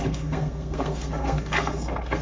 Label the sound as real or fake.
fake